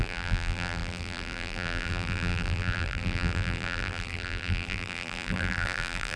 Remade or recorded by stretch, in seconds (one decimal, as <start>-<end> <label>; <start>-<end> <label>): 0.0-6.2 remade